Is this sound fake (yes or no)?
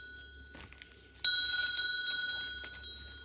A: no